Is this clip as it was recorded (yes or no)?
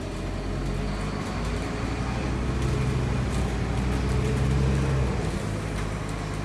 yes